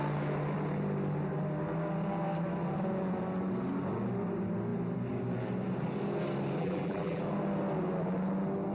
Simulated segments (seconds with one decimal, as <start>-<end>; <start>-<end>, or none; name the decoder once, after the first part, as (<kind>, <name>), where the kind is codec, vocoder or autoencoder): 6.6-7.2 (vocoder, BigVGAN v2)